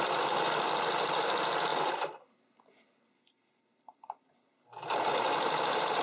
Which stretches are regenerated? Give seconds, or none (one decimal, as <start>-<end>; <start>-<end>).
none